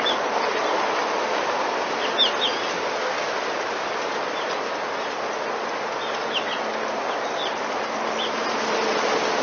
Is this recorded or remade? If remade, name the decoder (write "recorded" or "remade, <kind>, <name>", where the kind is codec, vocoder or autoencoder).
recorded